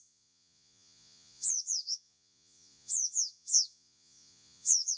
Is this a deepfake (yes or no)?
yes